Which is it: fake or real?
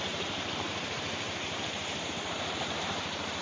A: fake